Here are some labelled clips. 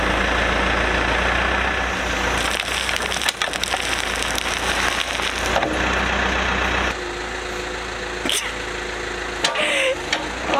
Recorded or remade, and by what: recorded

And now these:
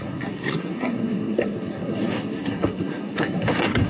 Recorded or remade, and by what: remade, codec, SNAC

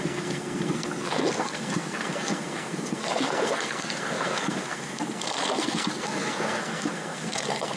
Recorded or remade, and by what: remade, codec, SNAC